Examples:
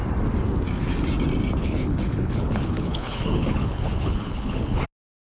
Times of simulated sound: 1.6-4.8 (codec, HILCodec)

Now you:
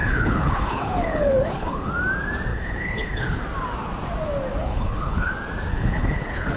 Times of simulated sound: 0.0-1.9 (codec, HILCodec); 2.5-3.4; 4.6-5.3; 5.7-6.6

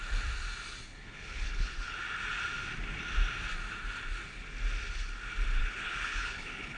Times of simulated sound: 0.9-2.0 (codec, HILCodec); 5.6-6.8

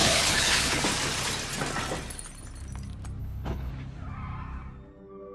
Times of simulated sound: 0.0-0.8 (codec, HILCodec); 3.2-3.7

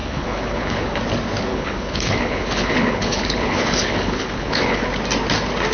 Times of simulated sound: 0.0-1.0 (codec, HILCodec); 1.5-4.9